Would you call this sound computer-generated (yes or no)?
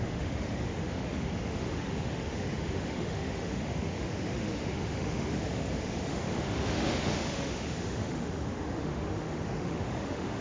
yes